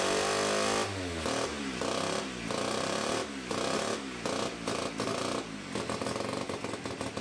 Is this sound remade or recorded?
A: recorded